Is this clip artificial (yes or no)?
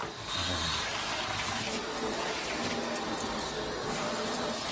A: no